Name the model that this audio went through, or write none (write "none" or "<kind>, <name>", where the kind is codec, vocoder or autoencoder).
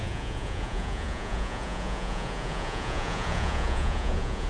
vocoder, Vocos